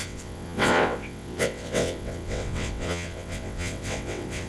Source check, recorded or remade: remade